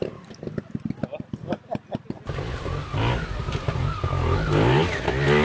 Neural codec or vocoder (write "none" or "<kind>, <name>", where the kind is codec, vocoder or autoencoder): none